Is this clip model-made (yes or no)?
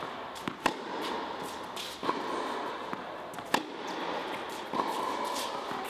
no